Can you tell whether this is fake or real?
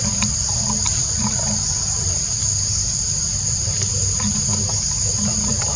real